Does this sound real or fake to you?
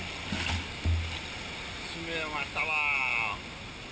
real